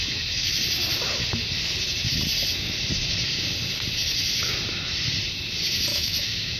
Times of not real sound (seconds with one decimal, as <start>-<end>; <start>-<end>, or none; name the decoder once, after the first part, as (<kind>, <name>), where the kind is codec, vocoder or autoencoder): 0.0-0.6 (autoencoder, DAC-VAE); 5.9-6.6